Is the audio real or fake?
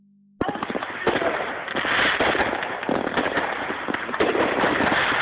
real